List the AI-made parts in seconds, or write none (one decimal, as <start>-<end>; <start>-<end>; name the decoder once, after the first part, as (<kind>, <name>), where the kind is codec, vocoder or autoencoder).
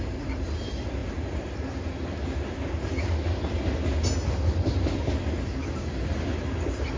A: none